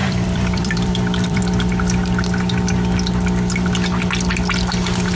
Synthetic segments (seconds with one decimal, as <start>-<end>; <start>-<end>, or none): 0.0-1.4

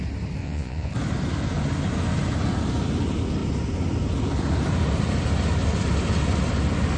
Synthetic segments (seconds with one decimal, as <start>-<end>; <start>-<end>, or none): 0.4-0.9

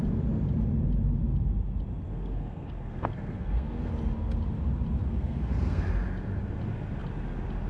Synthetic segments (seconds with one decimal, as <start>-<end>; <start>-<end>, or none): 2.1-3.9; 5.0-5.9

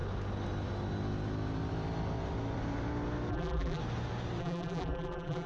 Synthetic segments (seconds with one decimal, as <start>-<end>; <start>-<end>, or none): 3.3-3.8; 4.4-5.5

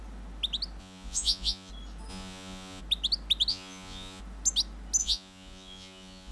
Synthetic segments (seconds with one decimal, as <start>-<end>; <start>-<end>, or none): 0.8-1.7; 2.1-2.8; 3.5-4.2; 5.0-6.3

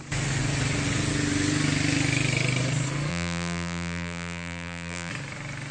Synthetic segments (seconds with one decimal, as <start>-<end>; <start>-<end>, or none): 3.1-5.1

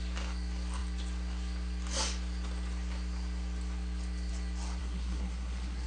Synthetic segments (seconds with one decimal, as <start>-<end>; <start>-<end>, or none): 4.8-5.9